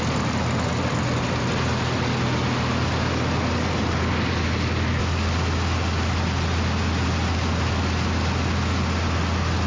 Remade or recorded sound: recorded